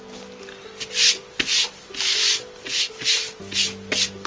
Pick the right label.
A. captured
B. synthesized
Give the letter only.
A